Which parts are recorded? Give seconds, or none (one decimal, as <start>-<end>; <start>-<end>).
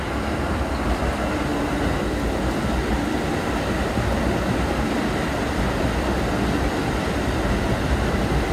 0.0-8.5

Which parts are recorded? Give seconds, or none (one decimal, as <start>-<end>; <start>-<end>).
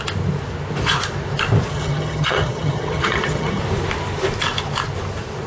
0.0-1.7; 3.6-5.5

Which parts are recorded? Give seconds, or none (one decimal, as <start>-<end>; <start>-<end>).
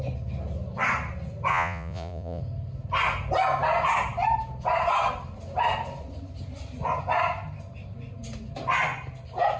0.0-1.5; 2.4-9.6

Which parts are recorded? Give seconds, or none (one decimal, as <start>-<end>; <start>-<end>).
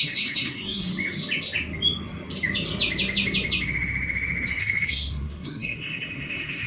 0.9-4.6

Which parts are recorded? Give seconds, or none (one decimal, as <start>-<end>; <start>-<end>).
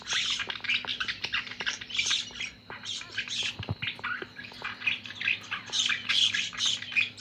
0.0-7.2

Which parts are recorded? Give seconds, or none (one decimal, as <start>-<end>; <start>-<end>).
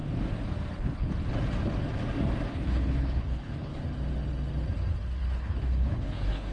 0.0-0.7; 1.1-2.5; 3.8-5.2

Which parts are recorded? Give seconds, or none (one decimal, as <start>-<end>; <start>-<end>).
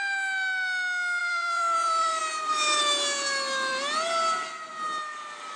0.0-1.2; 2.2-5.6